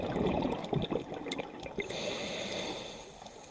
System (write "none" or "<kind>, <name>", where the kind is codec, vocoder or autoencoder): none